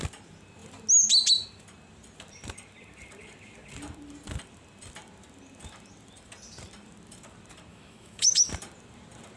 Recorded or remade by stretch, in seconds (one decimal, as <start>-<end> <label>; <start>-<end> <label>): 0.0-7.7 recorded; 7.7-8.5 remade; 8.5-9.4 recorded